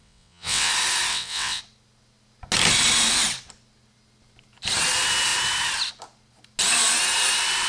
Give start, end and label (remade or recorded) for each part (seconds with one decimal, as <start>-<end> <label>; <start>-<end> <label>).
0.0-0.7 remade; 0.7-1.1 recorded; 1.1-1.6 remade; 1.6-7.7 recorded